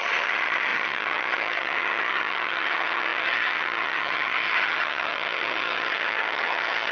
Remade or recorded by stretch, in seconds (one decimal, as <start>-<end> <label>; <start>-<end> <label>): 0.0-6.9 remade